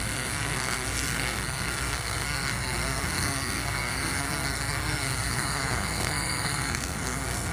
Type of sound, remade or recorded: remade